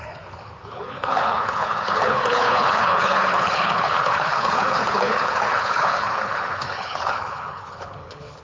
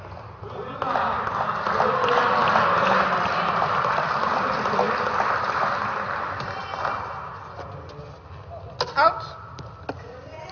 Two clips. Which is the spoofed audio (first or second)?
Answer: first